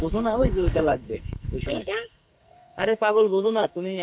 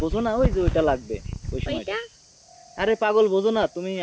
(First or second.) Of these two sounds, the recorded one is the second